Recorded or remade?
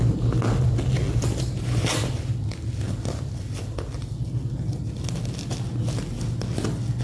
recorded